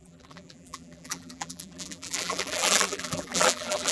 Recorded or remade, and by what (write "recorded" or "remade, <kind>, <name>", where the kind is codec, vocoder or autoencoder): remade, vocoder, BigVGAN v2